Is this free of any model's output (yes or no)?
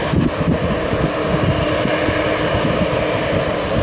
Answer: yes